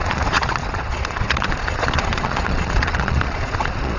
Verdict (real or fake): fake